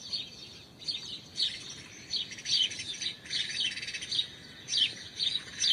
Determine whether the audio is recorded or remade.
recorded